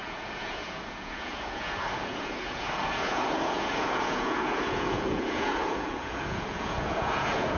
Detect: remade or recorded remade